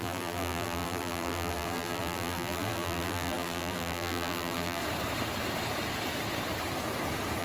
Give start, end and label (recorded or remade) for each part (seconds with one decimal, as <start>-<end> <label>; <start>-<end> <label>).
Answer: 0.0-4.8 remade; 4.8-7.4 recorded